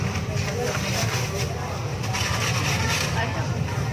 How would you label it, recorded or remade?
recorded